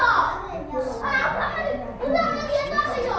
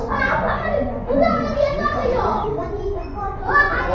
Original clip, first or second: first